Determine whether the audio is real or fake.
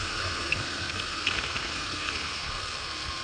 fake